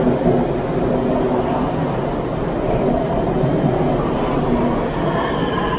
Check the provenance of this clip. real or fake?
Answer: real